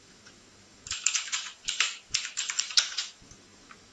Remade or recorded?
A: remade